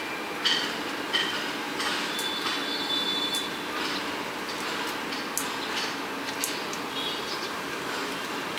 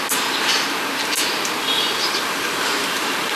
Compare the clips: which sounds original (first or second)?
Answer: first